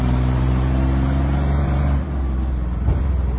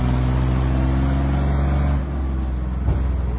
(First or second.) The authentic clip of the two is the second